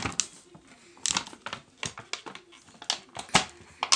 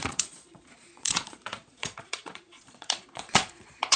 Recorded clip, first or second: first